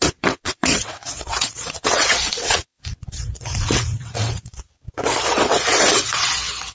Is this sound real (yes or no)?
no